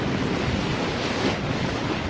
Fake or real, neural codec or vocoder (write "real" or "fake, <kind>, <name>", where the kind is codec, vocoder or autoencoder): real